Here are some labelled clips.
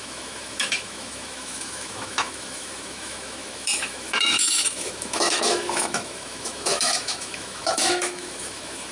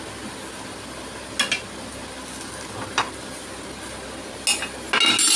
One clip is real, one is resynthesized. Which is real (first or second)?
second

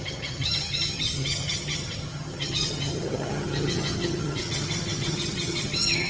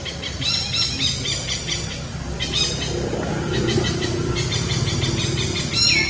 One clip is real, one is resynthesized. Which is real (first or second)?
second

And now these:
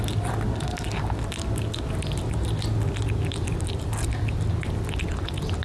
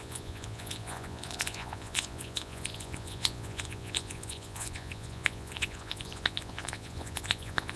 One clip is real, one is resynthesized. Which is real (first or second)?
first